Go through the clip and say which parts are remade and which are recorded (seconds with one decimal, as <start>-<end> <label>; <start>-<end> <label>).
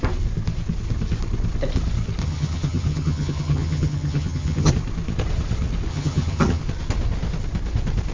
0.0-2.2 recorded; 2.2-4.7 remade; 4.7-5.9 recorded; 5.9-6.6 remade; 6.6-8.1 recorded